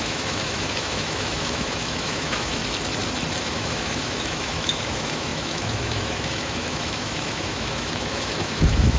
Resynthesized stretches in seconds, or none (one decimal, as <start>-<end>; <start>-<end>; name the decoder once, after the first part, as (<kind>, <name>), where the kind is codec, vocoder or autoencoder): 0.0-2.6 (autoencoder, DAC-VAE); 3.4-9.0